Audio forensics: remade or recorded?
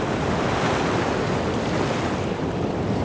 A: remade